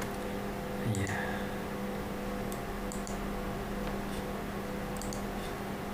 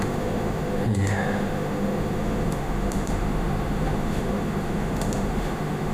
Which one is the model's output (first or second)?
second